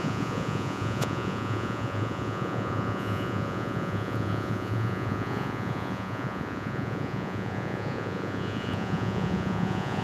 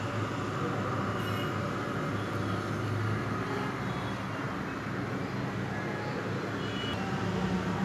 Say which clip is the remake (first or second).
first